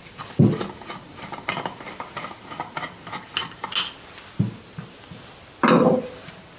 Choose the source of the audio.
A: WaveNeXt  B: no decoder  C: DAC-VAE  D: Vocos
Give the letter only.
B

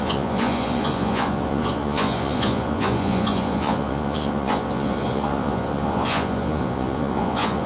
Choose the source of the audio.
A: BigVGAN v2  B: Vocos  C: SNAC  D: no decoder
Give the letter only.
B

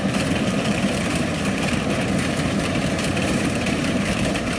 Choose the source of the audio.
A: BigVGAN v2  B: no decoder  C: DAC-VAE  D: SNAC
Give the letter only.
A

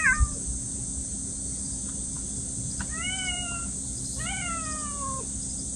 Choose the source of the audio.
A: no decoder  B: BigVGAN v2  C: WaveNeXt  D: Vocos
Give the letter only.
A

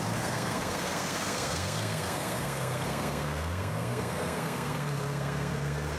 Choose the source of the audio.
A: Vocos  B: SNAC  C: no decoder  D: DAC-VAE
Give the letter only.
B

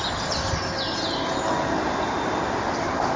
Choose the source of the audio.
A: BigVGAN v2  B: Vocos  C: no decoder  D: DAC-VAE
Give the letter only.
C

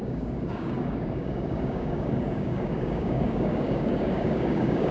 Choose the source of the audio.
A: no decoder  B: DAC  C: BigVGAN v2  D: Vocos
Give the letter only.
B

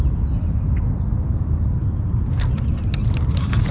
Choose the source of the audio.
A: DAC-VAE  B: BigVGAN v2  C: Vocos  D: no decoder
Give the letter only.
D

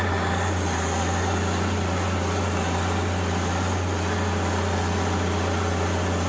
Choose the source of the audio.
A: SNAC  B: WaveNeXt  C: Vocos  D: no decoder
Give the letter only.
D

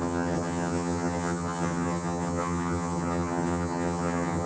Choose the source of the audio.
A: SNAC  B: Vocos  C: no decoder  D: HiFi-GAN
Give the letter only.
D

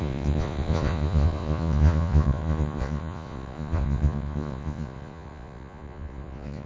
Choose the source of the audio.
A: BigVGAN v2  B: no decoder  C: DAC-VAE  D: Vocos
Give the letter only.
D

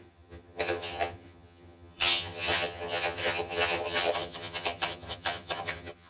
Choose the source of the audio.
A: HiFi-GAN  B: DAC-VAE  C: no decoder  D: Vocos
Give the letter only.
A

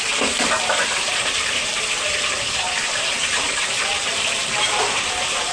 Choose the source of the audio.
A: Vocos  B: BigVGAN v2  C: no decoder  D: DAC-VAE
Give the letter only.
B